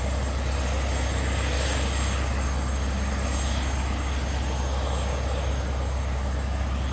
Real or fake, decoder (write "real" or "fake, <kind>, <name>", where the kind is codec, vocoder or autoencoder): real